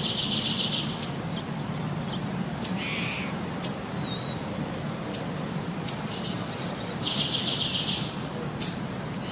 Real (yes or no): no